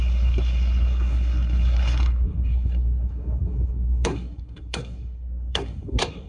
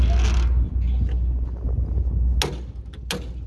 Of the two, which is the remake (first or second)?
first